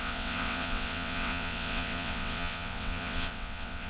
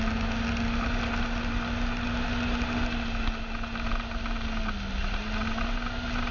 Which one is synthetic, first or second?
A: first